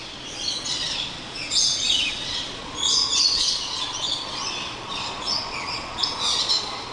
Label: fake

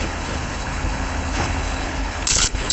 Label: fake